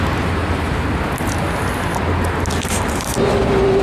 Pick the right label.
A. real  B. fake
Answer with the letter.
A